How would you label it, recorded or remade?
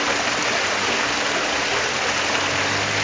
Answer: recorded